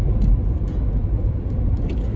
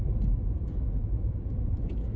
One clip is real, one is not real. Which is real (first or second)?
first